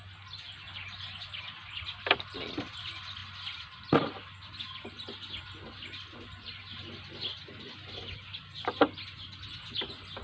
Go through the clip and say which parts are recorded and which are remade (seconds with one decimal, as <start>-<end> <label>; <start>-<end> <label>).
0.0-10.2 recorded